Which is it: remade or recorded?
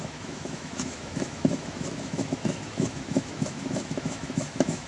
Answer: remade